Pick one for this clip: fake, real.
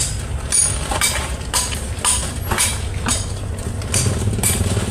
real